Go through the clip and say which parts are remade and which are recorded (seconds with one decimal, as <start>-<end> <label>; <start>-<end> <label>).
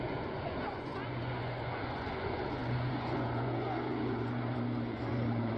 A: 0.0-5.6 remade